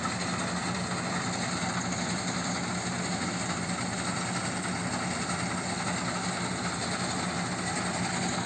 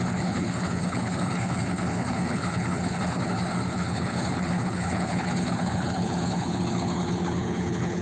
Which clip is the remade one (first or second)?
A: second